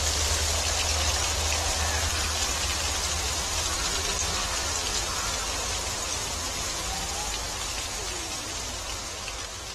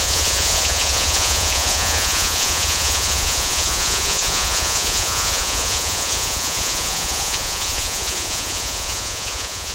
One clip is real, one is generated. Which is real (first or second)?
first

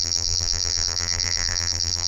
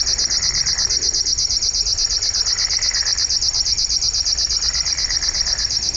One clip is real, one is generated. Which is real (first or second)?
second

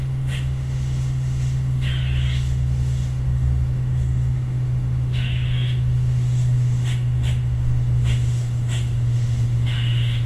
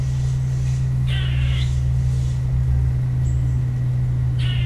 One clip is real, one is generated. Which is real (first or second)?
second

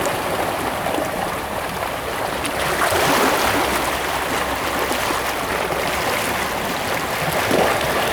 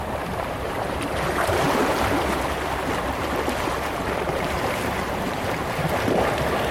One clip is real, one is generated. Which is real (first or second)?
first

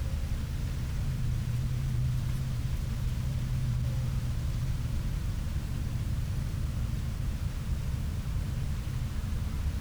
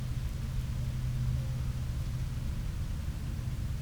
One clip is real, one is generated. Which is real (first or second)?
second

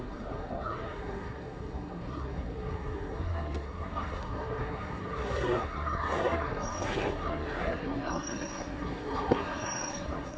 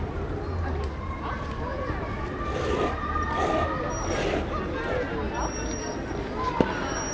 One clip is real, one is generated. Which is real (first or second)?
second